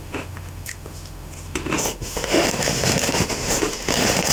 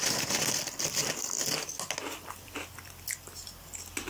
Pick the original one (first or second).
second